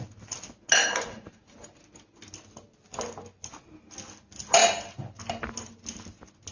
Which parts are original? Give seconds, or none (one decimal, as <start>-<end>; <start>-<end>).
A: 0.0-6.5